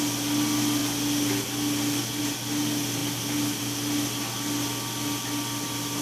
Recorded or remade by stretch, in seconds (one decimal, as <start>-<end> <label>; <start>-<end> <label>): 0.0-6.0 recorded